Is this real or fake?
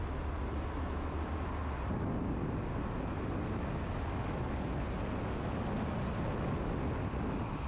real